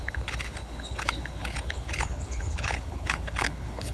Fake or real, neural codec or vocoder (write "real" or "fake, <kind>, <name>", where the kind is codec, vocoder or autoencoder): fake, codec, HILCodec